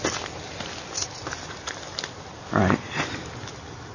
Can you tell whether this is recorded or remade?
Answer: recorded